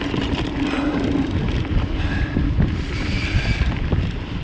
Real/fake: real